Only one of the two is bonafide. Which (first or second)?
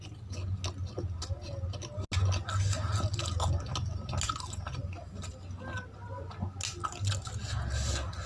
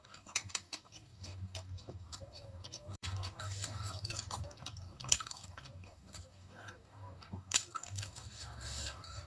first